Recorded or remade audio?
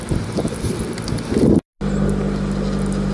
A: recorded